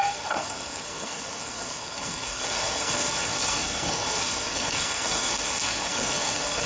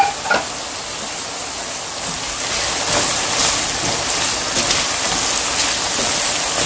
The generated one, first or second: first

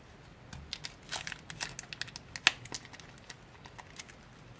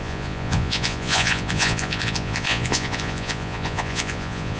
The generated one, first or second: second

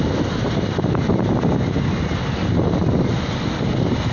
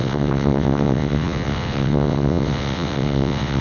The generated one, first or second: second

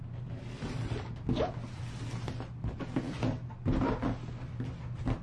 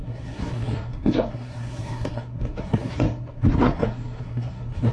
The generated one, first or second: second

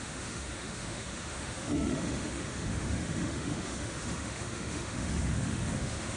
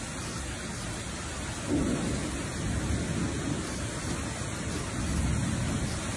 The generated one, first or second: first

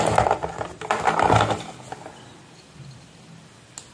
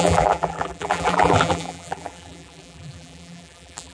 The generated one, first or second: second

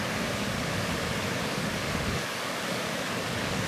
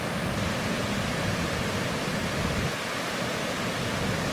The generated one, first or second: first